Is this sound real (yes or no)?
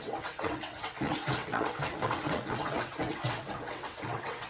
no